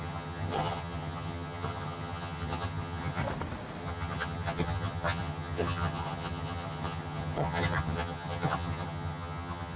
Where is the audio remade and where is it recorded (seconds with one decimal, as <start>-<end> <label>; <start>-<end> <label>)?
0.0-3.2 remade; 3.2-3.8 recorded; 3.8-9.8 remade